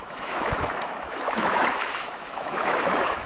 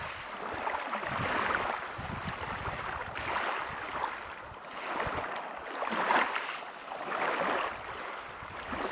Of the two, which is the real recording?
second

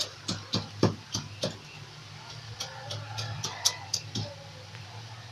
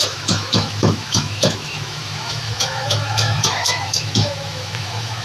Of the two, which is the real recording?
first